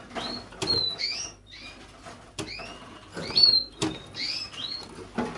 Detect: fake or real real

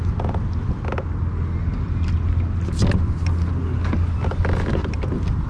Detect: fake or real real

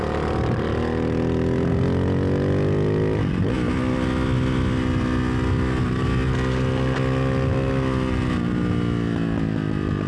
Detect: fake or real real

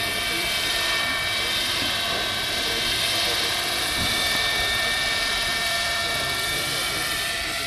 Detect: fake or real fake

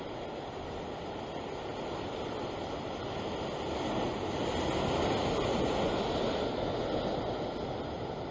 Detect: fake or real real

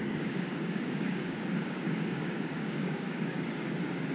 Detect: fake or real fake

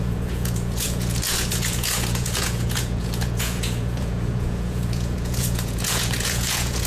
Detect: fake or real fake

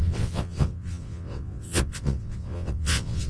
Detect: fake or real fake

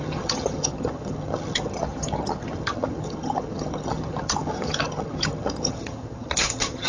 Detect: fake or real fake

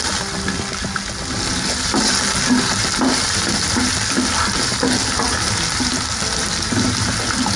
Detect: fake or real real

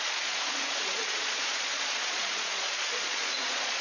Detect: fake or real fake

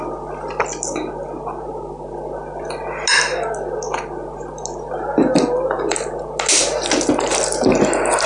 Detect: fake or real real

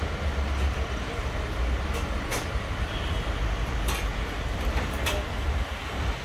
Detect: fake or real real